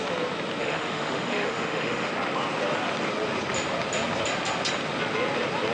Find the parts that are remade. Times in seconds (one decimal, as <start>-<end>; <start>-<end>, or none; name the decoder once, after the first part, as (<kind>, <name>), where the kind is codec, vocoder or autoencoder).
0.6-2.1 (autoencoder, DAC-VAE)